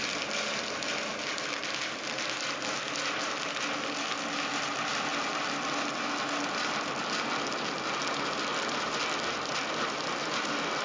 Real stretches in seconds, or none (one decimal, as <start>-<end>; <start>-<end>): 0.0-10.8